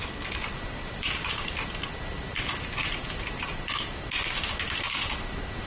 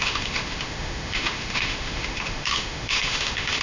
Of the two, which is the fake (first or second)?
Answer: second